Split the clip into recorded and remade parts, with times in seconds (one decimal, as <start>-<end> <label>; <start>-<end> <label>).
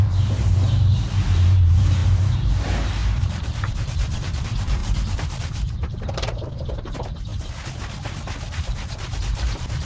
0.0-7.3 remade; 7.3-8.6 recorded; 8.6-9.9 remade